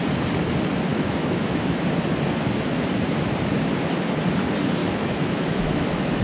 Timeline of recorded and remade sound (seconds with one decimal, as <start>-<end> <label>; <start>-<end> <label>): 0.0-0.9 recorded; 0.9-1.8 remade; 1.8-4.8 recorded; 4.8-6.2 remade